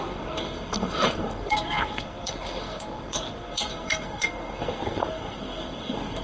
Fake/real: fake